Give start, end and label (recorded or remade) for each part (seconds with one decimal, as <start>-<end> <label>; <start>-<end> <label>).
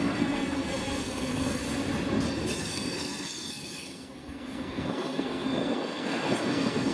0.0-1.6 remade; 1.6-2.6 recorded; 2.6-6.9 remade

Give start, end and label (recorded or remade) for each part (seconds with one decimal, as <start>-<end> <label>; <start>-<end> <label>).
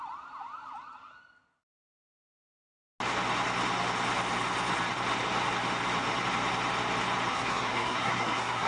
0.0-7.3 recorded; 7.3-8.7 remade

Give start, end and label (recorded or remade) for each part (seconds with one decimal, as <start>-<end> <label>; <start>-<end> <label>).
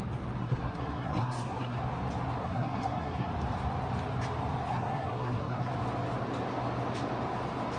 0.0-0.4 recorded; 0.4-1.8 remade; 1.8-2.4 recorded; 2.4-3.3 remade; 3.3-4.7 recorded; 4.7-5.7 remade; 5.7-7.8 recorded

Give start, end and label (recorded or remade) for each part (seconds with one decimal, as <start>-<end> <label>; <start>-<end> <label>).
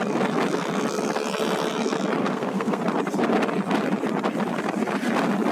0.0-2.2 recorded; 2.2-2.8 remade; 2.8-5.5 recorded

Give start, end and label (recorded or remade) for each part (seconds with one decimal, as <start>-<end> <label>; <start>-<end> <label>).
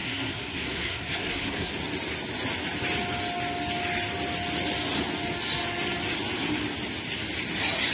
0.0-1.7 remade; 1.7-7.9 recorded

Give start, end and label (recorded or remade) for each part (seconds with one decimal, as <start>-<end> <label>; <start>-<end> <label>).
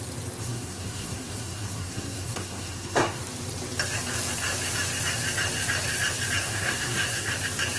0.0-0.4 recorded; 0.4-3.2 remade; 3.2-6.4 recorded; 6.4-7.3 remade; 7.3-7.8 recorded